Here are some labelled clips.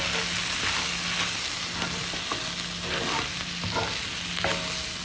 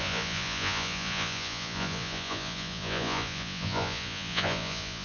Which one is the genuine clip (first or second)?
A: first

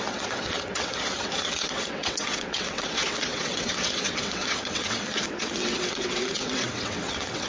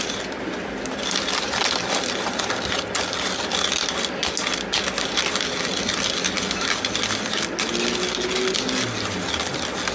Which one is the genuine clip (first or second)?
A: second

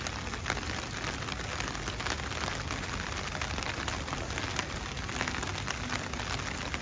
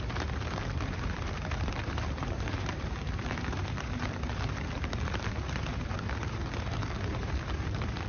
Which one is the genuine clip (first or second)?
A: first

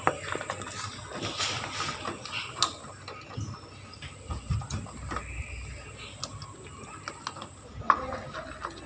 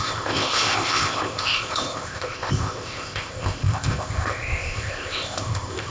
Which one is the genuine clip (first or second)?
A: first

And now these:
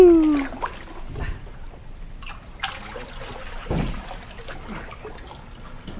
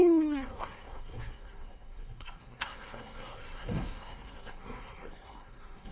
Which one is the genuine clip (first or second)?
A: first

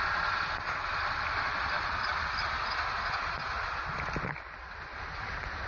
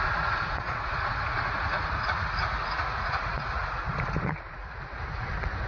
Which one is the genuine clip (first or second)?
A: first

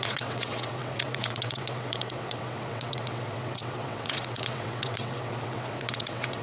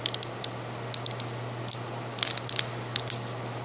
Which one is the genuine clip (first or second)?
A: second